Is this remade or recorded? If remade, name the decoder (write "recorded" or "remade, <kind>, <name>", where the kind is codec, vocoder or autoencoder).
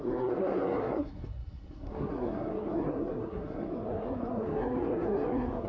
remade, codec, SNAC